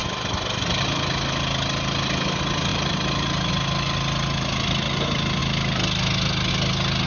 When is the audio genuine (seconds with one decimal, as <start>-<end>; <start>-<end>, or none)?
0.0-2.7; 3.5-7.1